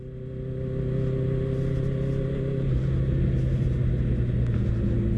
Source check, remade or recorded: recorded